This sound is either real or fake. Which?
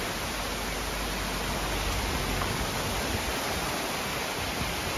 real